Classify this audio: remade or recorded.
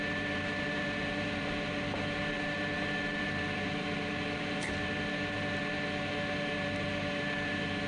remade